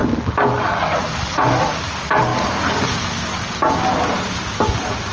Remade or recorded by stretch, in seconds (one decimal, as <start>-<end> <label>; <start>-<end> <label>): 0.0-1.8 recorded; 1.8-2.3 remade; 2.3-4.0 recorded; 4.0-5.1 remade